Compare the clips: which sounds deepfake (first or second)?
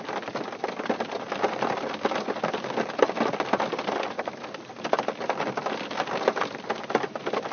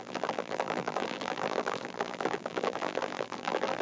second